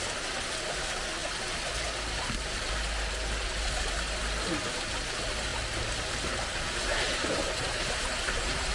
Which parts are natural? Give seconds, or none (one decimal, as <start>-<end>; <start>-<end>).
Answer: 0.0-8.7